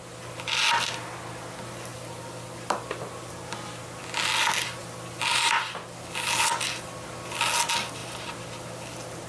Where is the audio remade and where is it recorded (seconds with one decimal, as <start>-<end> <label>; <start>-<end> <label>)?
0.0-1.9 recorded; 1.9-2.8 remade; 2.8-4.8 recorded; 4.8-5.4 remade; 5.4-8.0 recorded; 8.0-8.7 remade; 8.7-9.3 recorded